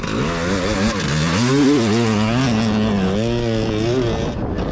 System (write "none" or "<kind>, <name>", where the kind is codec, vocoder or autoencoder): none